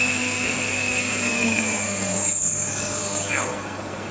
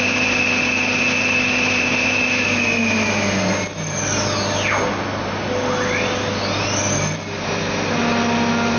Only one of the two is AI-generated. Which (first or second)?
first